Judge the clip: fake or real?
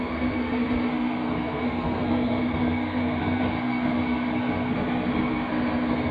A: fake